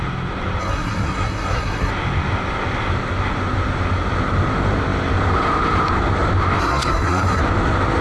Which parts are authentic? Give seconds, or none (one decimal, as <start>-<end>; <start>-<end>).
0.0-0.6; 1.9-6.6; 7.4-8.0

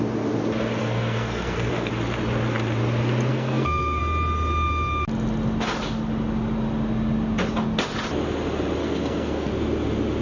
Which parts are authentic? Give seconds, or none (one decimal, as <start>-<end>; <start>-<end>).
0.0-0.8; 1.9-3.3; 4.0-8.8; 9.5-10.2